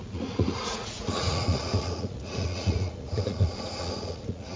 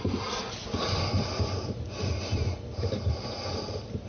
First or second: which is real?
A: second